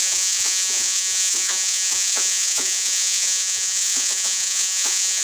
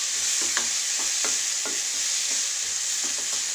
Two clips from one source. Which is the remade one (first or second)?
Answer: first